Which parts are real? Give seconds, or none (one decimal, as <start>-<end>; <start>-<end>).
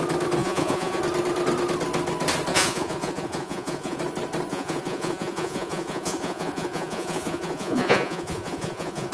0.0-0.4; 1.0-2.5; 4.0-4.5